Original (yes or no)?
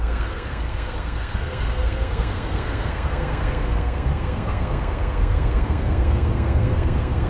no